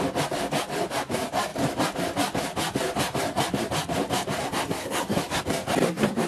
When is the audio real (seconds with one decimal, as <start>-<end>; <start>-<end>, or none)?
0.0-4.4; 5.4-6.3